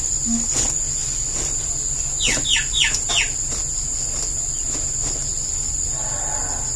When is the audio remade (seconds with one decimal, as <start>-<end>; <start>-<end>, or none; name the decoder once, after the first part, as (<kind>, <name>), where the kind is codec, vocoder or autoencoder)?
none